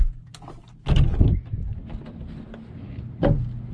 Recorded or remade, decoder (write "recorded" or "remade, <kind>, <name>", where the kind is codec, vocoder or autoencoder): recorded